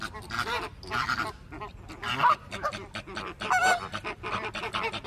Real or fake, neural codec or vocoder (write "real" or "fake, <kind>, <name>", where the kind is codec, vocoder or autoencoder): real